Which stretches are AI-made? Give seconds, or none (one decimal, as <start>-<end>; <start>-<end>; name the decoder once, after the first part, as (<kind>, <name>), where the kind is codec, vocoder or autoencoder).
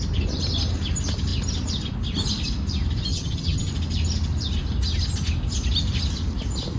3.1-3.7 (vocoder, HiFi-GAN)